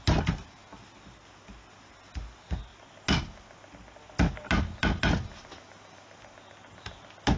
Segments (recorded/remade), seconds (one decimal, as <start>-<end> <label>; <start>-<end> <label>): 0.0-7.4 recorded